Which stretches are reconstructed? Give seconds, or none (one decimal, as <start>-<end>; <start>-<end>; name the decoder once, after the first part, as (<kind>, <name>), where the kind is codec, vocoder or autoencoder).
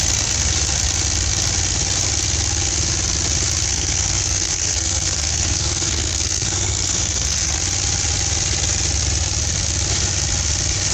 3.7-7.6 (codec, SNAC)